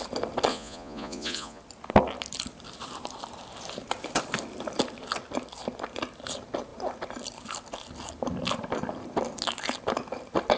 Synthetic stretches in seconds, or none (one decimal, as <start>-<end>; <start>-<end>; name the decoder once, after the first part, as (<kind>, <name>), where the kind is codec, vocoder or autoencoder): 0.5-1.6 (vocoder, Vocos)